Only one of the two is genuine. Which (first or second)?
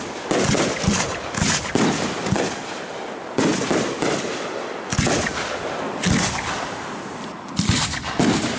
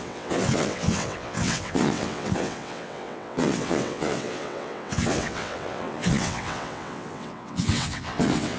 first